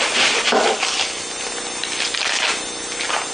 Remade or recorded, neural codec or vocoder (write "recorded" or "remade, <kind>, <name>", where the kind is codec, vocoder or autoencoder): recorded